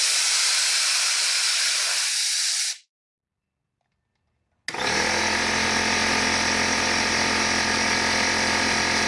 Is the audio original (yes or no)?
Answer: yes